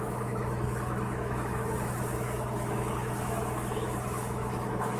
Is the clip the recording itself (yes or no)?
no